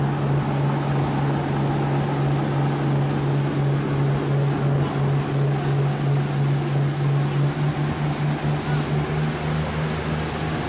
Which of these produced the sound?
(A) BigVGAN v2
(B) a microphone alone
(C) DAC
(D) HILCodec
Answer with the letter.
B